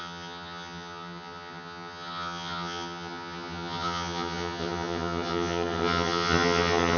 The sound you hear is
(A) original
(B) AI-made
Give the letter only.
B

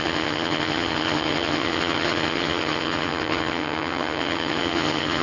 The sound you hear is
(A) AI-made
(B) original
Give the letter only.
A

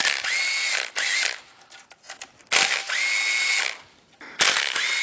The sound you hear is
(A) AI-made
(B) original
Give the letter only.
B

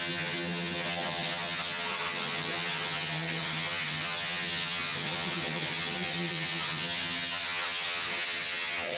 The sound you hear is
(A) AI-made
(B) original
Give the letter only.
A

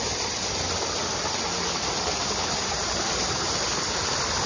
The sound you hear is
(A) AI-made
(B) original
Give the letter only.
B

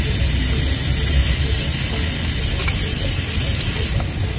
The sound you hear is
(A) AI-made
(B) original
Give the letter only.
B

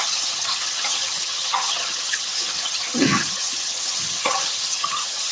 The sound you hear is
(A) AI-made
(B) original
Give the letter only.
A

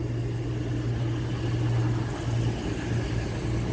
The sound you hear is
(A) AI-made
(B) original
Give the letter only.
B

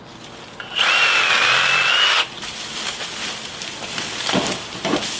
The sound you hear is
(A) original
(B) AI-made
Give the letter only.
A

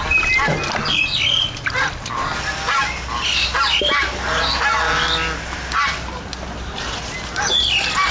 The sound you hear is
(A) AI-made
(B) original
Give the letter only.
B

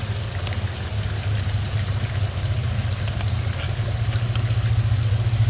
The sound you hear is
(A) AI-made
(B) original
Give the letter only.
B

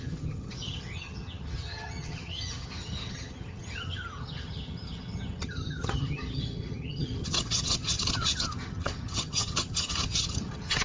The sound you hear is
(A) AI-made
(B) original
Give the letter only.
A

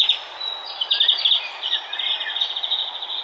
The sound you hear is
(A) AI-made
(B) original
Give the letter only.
B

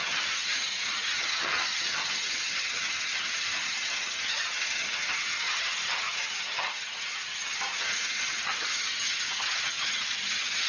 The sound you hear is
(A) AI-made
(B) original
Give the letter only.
A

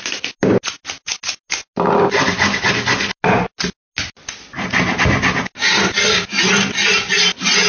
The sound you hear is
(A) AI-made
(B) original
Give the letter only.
B